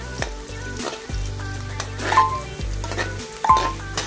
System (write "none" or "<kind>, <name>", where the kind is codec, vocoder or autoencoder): none